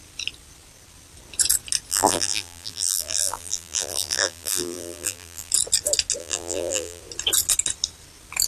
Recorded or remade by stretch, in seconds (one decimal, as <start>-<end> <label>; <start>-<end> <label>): 0.0-1.9 recorded; 1.9-5.5 remade; 5.5-6.2 recorded; 6.2-7.0 remade; 7.0-8.5 recorded

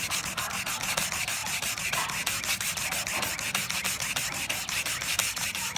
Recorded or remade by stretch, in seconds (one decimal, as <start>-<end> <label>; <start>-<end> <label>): 0.0-5.8 recorded

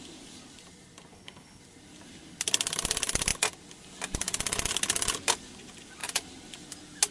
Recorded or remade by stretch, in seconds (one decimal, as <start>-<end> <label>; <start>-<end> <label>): 0.0-1.1 recorded; 1.1-1.6 remade; 1.6-7.1 recorded

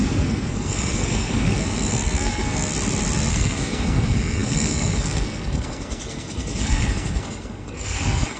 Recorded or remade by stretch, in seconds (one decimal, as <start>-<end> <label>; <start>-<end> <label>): 0.0-2.7 remade; 2.7-3.3 recorded; 3.3-8.4 remade

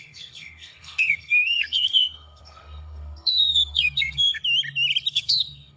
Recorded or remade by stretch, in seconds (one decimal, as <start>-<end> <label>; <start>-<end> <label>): 0.0-4.4 remade; 4.4-5.1 recorded; 5.1-5.8 remade

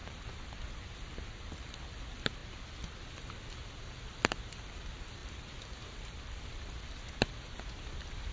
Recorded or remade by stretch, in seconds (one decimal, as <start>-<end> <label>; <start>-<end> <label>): 0.0-8.3 recorded